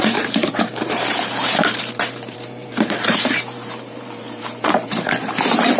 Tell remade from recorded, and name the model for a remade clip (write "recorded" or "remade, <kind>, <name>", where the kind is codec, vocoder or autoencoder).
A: remade, vocoder, BigVGAN v2